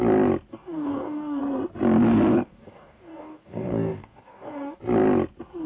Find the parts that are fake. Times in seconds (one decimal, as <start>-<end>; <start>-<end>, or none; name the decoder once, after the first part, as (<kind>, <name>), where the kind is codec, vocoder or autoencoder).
0.5-1.4 (codec, DAC); 2.3-4.8